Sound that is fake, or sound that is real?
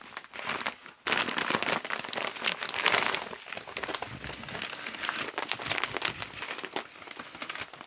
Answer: real